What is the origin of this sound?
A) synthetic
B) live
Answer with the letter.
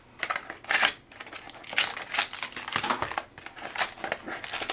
B